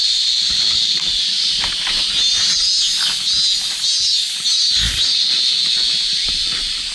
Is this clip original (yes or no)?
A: yes